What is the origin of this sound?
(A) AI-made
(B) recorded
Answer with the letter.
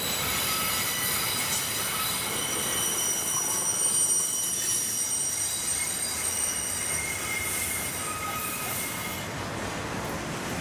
B